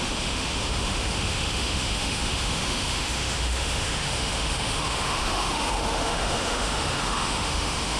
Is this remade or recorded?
remade